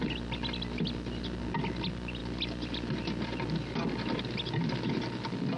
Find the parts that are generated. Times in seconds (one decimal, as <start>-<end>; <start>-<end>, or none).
none